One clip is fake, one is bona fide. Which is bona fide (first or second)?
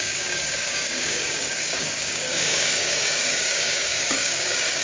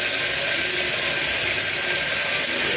second